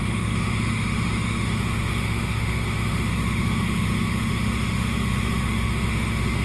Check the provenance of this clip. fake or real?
fake